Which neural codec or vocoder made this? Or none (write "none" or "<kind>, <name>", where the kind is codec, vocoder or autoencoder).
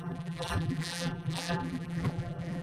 vocoder, BigVGAN v2